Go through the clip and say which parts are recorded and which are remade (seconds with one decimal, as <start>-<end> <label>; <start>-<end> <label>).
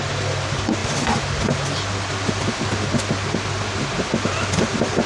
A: 0.0-5.1 recorded